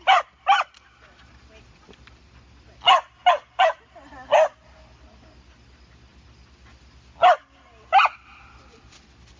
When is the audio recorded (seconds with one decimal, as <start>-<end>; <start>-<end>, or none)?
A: 0.0-9.4